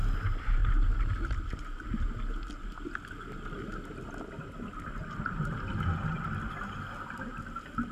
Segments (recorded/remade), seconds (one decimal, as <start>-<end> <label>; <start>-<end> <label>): 0.0-7.9 recorded